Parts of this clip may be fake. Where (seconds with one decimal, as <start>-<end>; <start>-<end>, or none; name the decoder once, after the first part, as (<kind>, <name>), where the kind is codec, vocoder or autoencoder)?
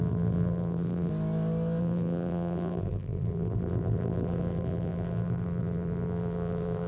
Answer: 0.0-1.1 (vocoder, BigVGAN v2); 1.8-6.9